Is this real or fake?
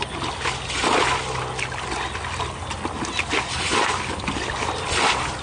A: real